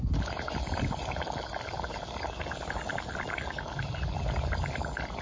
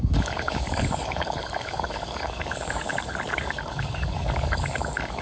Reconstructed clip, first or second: second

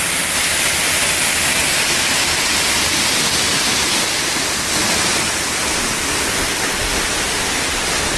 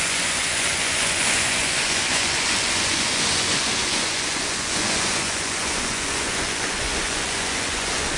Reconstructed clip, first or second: second